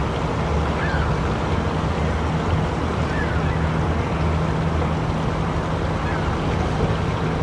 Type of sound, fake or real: real